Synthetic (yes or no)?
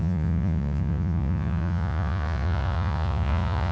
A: yes